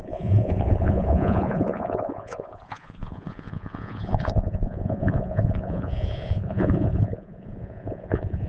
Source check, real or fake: fake